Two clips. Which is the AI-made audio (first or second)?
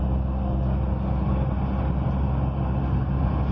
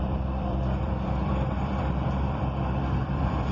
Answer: second